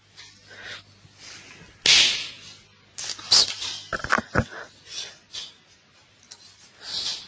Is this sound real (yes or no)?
yes